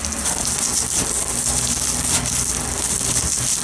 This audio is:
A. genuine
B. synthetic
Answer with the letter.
A